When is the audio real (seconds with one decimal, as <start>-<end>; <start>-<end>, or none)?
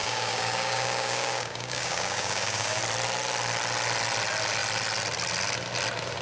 2.8-6.2